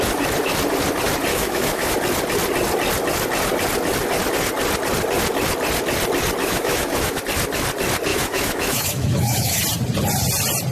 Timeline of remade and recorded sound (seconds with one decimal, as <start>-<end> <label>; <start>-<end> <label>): 0.0-1.3 recorded; 1.3-1.9 remade; 1.9-6.4 recorded; 6.4-7.2 remade; 7.2-8.1 recorded; 8.1-9.6 remade; 9.6-10.7 recorded